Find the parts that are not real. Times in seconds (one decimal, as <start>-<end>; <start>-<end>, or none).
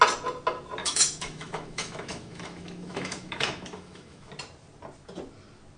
0.8-4.3